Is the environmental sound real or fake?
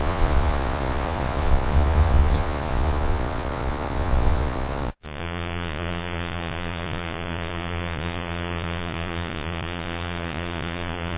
fake